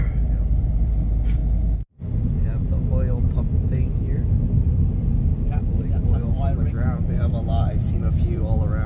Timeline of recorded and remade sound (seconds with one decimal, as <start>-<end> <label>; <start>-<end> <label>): 0.0-1.4 remade; 1.4-4.4 recorded; 4.4-8.9 remade